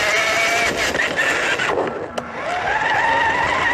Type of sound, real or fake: real